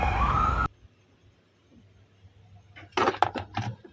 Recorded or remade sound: recorded